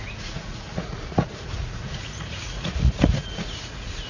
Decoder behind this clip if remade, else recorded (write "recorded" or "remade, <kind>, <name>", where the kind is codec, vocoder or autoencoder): remade, vocoder, Vocos